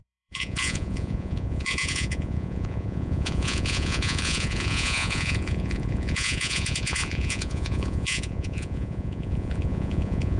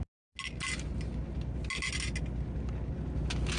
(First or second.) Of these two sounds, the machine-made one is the first